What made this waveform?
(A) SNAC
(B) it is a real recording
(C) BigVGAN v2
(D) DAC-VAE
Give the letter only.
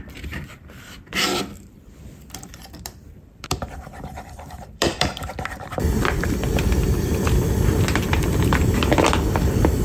C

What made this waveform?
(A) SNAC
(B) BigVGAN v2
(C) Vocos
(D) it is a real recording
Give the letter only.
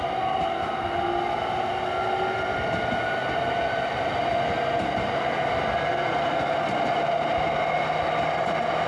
D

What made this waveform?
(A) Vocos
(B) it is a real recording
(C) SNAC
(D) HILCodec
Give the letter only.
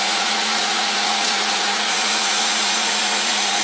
A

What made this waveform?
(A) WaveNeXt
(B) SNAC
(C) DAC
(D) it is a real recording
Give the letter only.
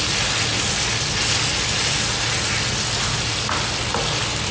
D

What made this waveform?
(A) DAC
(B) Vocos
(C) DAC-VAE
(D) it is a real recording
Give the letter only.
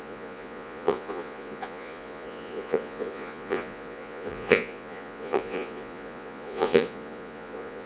B